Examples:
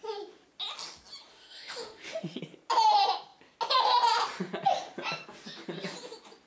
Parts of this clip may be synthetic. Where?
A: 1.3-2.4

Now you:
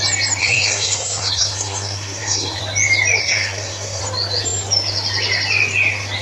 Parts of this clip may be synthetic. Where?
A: 0.4-2.6; 3.2-4.0

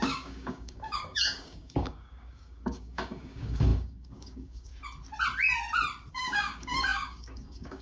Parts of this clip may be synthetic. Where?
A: 0.0-4.7; 6.1-7.8

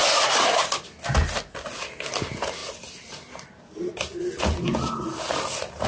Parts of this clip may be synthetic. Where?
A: none

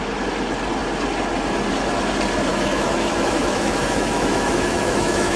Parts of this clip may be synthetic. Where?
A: 2.5-5.4